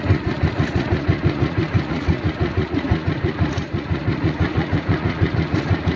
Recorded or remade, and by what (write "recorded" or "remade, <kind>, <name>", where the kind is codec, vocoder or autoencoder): remade, vocoder, Vocos